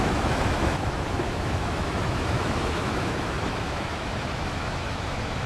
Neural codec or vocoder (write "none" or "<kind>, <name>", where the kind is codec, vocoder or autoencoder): autoencoder, DAC-VAE